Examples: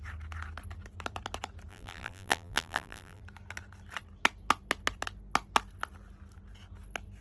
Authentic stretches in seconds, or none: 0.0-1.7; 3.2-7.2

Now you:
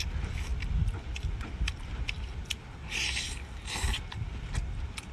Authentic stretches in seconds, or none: 2.3-4.5

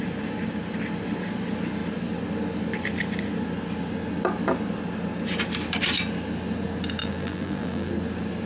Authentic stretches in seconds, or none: 0.0-7.0; 7.9-8.5

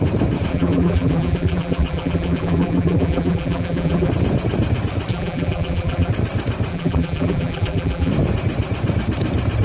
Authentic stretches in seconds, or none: 0.0-0.5; 4.1-5.1; 6.1-6.7; 8.1-9.6

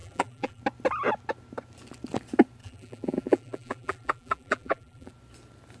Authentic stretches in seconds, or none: 0.6-2.6; 5.1-5.8

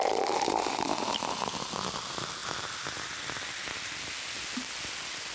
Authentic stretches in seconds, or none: 0.0-5.3

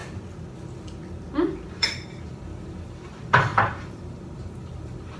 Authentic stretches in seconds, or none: 0.0-1.7